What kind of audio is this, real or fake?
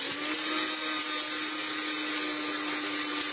real